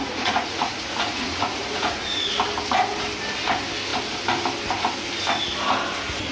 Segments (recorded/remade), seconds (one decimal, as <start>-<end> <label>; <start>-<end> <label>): 0.0-2.2 remade; 2.2-6.3 recorded